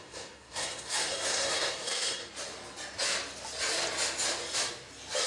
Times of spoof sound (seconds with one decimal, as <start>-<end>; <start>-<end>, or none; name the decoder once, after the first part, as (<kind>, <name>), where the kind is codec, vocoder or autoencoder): 0.0-2.2 (codec, SNAC)